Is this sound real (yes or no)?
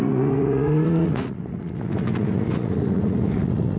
no